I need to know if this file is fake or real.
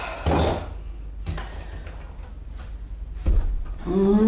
real